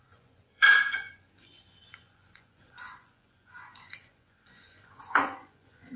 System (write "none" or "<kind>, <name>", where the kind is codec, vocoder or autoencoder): vocoder, Vocos